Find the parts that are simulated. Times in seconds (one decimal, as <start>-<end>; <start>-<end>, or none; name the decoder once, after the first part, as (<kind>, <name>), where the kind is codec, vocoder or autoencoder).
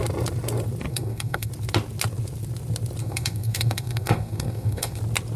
0.9-1.5 (codec, SNAC); 3.0-5.0